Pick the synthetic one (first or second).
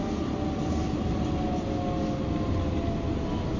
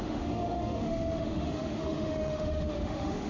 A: second